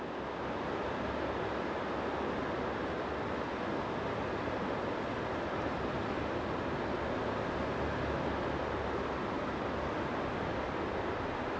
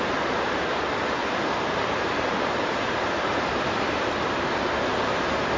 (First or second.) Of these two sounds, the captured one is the first